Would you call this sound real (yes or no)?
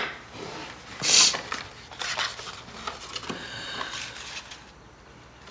yes